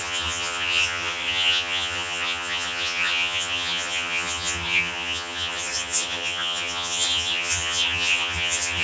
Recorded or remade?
remade